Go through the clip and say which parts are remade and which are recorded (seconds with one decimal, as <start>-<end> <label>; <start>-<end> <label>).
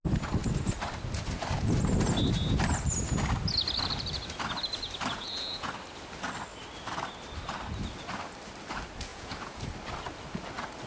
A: 0.0-5.1 recorded; 5.1-5.7 remade; 5.7-9.1 recorded; 9.1-9.6 remade; 9.6-10.9 recorded